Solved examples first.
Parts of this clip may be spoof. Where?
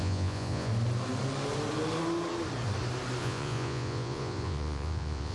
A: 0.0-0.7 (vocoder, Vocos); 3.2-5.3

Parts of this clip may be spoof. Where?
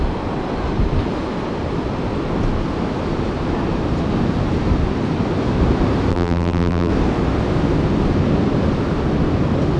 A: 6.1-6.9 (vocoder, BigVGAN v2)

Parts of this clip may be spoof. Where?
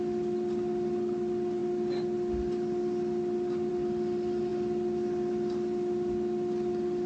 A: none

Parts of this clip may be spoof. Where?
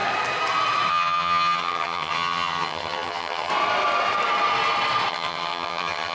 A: 0.9-3.5 (vocoder, HiFi-GAN); 5.1-6.1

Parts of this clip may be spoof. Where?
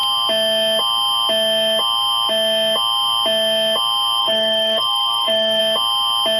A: 4.2-5.6 (codec, DAC)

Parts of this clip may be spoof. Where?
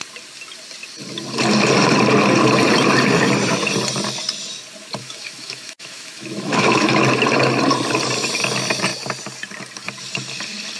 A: 5.0-7.0 (autoencoder, DAC-VAE)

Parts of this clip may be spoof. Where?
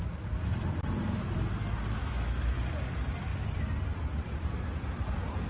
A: 2.0-2.6 (autoencoder, DAC-VAE)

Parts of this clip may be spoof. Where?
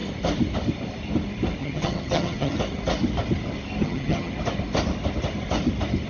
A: 1.6-2.6 (vocoder, HiFi-GAN); 3.8-4.3